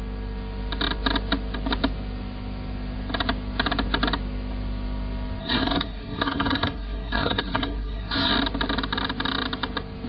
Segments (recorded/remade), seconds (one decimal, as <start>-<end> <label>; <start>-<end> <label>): 0.0-5.4 recorded; 5.4-8.3 remade; 8.3-10.1 recorded